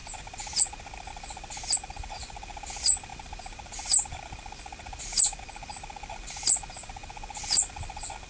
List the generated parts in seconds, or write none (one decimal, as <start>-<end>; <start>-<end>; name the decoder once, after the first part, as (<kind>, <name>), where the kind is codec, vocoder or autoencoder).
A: none